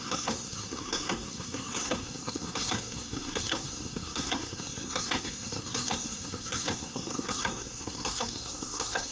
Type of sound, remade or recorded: remade